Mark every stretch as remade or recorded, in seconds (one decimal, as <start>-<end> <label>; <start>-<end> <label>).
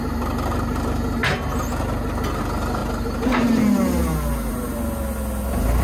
0.0-5.8 recorded